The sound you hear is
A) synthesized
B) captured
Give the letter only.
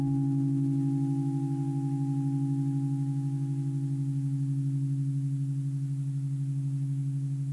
B